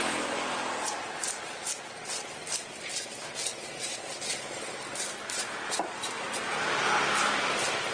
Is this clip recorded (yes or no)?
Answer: yes